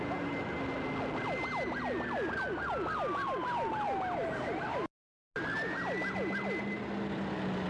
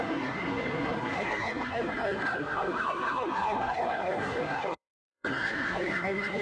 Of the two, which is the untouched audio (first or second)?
first